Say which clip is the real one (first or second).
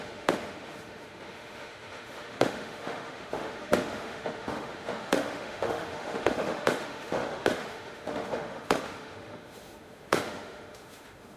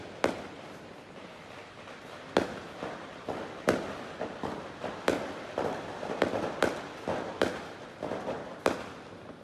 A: second